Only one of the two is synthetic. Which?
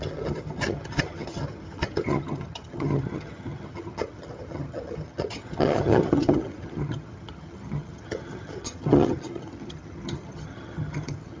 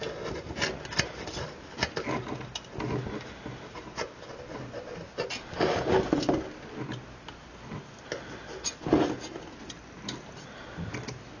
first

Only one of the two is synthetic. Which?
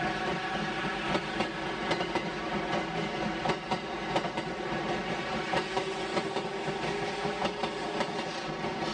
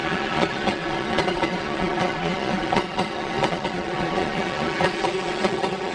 second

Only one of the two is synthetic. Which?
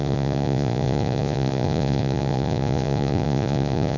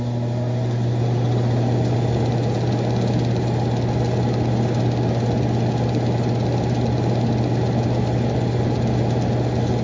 first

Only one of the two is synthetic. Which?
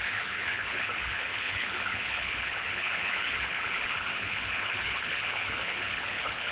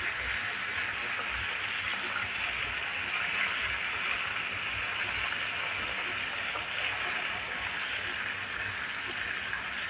first